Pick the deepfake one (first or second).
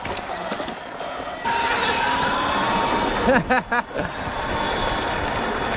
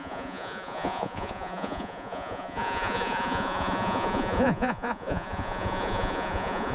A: second